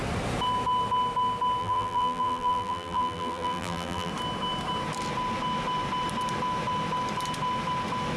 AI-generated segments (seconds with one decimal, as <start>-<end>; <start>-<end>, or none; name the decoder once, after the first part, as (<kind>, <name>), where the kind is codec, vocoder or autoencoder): 1.6-4.1 (vocoder, BigVGAN v2)